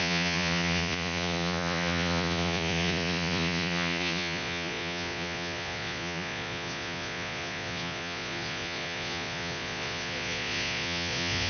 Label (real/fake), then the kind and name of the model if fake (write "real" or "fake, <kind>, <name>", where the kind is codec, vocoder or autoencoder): fake, vocoder, Vocos